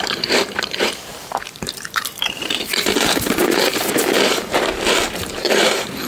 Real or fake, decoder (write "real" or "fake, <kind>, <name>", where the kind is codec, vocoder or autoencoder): fake, vocoder, BigVGAN v2